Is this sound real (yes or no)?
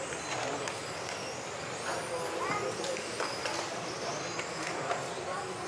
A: yes